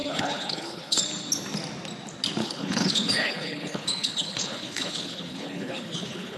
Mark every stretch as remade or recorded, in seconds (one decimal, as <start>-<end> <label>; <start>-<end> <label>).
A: 0.0-1.0 remade; 1.0-2.4 recorded; 2.4-6.4 remade